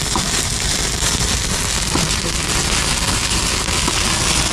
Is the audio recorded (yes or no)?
yes